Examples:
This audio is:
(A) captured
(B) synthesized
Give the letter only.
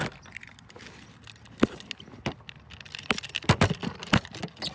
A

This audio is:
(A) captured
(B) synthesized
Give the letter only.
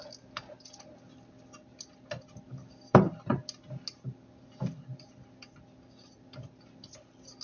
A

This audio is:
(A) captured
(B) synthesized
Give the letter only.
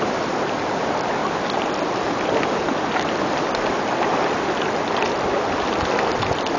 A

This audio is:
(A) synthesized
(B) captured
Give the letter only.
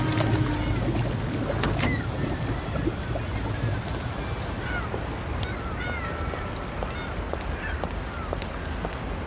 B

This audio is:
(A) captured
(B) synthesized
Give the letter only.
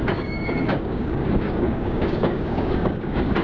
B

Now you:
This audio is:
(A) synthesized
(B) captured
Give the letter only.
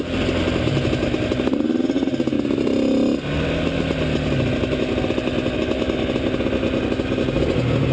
B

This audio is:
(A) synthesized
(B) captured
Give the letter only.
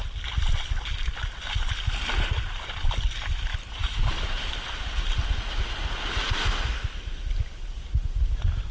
B